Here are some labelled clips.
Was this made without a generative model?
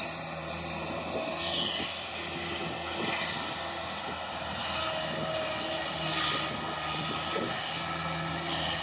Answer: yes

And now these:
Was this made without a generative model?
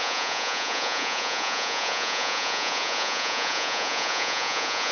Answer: no